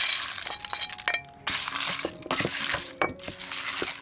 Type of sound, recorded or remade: recorded